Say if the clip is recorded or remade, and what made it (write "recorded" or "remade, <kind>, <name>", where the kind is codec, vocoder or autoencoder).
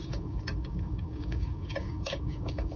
remade, codec, DAC